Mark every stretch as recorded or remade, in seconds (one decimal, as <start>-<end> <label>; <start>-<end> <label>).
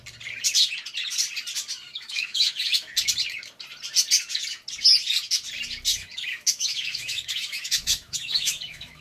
0.0-1.9 recorded; 1.9-2.9 remade; 2.9-5.9 recorded; 5.9-9.0 remade